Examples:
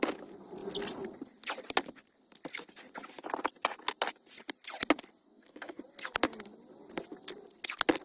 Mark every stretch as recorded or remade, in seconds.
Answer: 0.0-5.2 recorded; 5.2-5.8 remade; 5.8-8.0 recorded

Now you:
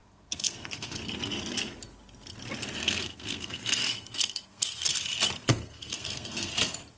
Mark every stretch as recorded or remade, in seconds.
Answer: 0.0-1.0 remade; 1.0-2.8 recorded; 2.8-5.0 remade; 5.0-5.5 recorded; 5.5-6.5 remade; 6.5-7.0 recorded

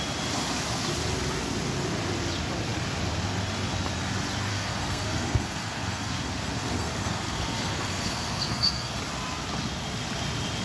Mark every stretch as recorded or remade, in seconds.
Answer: 0.0-4.5 recorded; 4.5-9.0 remade; 9.0-10.6 recorded

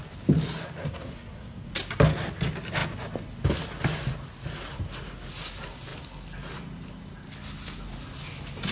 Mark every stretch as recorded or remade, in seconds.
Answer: 0.0-0.8 recorded; 0.8-1.7 remade; 1.7-8.7 recorded

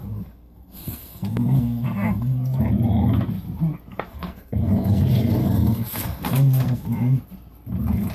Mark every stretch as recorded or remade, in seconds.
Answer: 0.0-2.6 remade; 2.6-3.9 recorded; 3.9-5.0 remade; 5.0-5.4 recorded; 5.4-7.2 remade; 7.2-8.1 recorded